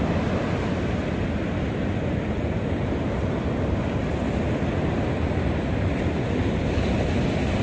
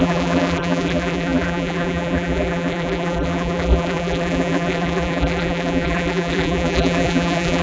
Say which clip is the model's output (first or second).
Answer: second